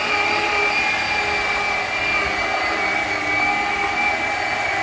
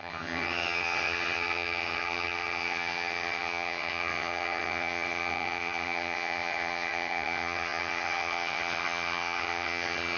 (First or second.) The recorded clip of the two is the first